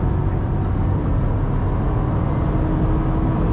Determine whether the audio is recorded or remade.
recorded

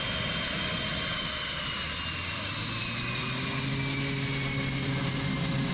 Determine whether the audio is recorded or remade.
recorded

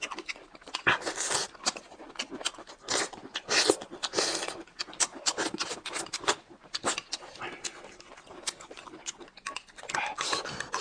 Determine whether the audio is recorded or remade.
recorded